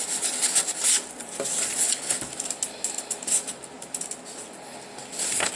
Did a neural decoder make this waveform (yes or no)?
no